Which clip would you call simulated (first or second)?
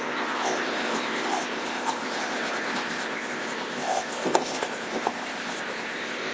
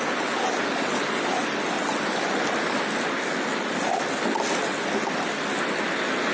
first